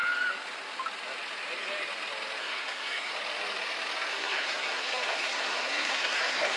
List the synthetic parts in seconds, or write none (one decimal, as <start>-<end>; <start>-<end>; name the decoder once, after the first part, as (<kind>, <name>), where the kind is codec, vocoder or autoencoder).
2.4-3.1 (codec, SNAC); 4.1-6.6